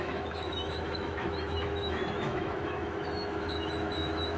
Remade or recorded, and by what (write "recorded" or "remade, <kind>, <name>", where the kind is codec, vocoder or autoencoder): remade, autoencoder, DAC-VAE